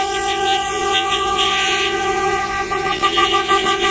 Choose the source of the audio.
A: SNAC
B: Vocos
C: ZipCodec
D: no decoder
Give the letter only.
B